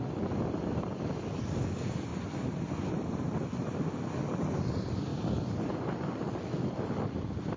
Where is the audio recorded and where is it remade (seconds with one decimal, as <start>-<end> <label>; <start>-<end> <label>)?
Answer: 0.0-2.1 remade; 2.1-4.4 recorded; 4.4-7.6 remade